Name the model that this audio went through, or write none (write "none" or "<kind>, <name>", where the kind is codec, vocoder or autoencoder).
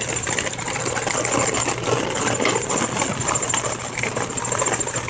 vocoder, BigVGAN v2